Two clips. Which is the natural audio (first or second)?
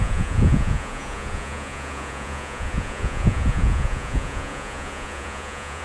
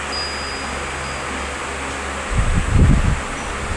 second